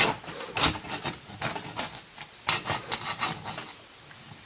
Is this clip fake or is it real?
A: real